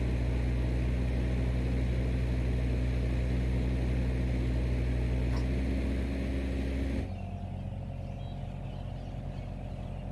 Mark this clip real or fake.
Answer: real